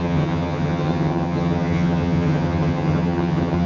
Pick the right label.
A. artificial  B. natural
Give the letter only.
A